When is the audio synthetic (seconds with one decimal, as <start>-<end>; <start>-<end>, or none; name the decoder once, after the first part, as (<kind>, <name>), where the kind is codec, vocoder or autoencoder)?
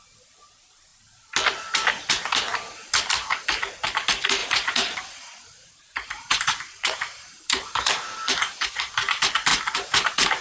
4.4-8.9 (vocoder, BigVGAN v2); 9.5-10.4